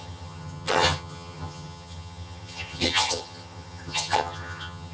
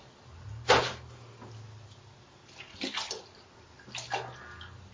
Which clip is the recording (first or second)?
second